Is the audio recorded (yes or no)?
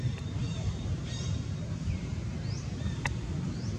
no